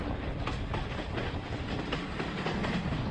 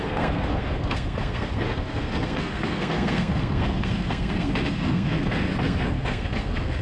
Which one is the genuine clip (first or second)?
first